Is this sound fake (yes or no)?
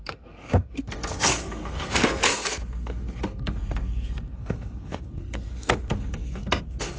yes